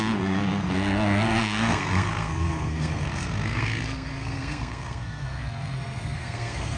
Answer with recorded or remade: remade